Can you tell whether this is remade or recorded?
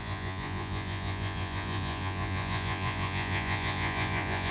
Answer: remade